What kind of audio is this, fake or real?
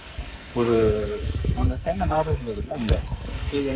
fake